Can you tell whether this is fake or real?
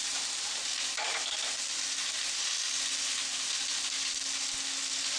real